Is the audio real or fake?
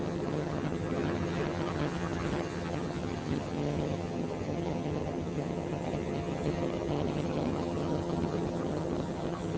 fake